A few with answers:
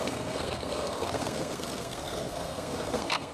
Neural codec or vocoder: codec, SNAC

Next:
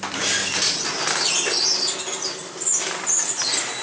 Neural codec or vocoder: none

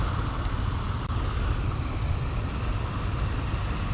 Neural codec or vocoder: none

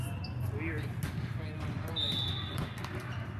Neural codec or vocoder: none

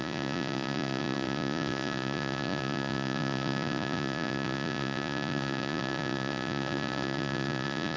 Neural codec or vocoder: vocoder, Vocos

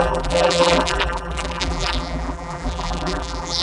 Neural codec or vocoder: vocoder, BigVGAN v2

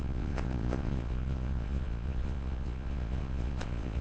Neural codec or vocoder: vocoder, Vocos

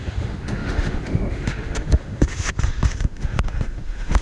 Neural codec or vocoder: autoencoder, DAC-VAE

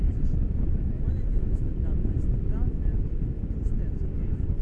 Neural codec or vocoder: none